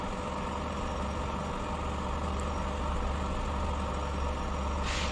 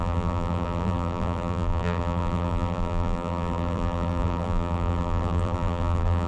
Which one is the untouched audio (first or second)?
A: first